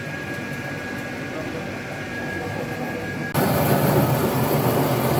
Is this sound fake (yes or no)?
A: no